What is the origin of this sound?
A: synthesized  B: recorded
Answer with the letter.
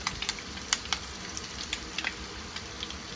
B